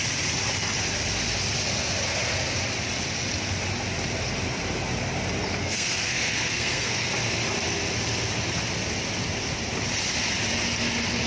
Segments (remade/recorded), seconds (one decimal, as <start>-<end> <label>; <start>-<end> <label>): 0.0-5.6 recorded; 5.6-7.1 remade; 7.1-11.3 recorded